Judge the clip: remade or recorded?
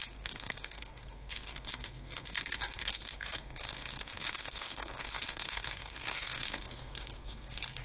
remade